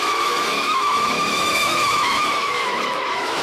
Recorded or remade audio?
remade